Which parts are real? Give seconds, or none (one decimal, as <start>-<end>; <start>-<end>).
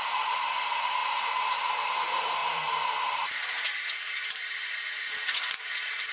1.0-1.7